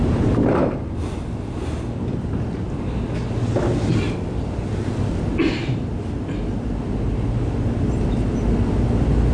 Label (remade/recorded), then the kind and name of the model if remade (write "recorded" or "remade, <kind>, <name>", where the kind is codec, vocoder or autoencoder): recorded